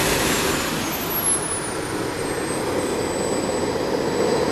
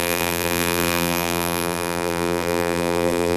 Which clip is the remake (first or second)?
second